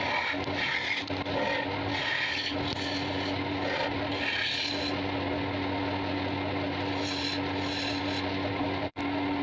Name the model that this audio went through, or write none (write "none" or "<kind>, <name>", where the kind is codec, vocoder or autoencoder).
none